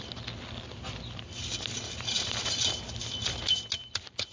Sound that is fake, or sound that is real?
real